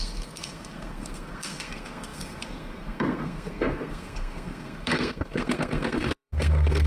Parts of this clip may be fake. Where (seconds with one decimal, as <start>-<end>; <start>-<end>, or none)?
0.0-6.9